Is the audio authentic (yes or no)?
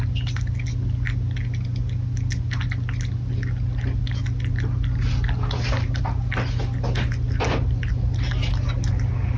yes